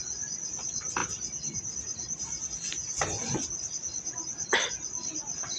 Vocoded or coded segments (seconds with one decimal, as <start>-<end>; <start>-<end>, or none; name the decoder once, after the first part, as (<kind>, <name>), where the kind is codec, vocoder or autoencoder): none